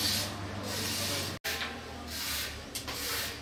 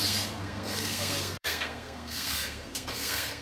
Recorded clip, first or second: first